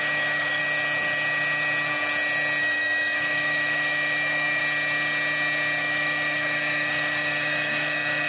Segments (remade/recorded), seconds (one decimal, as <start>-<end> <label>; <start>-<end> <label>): 0.0-0.6 remade; 0.6-2.6 recorded; 2.6-4.6 remade; 4.6-5.8 recorded; 5.8-8.3 remade